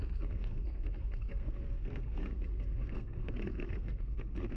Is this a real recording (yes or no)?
no